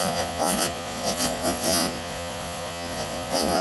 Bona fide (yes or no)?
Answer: no